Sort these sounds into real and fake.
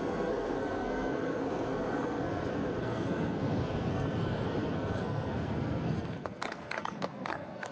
fake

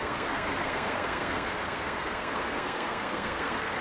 fake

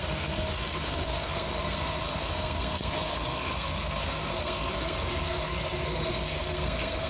fake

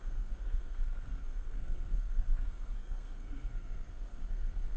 fake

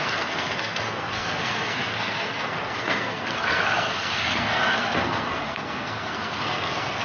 fake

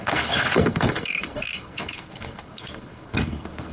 fake